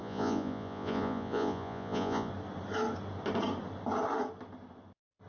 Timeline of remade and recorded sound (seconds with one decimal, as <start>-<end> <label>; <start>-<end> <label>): 0.0-2.3 remade; 2.3-5.3 recorded